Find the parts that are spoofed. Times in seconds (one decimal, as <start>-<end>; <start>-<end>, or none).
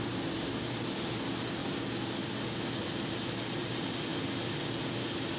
none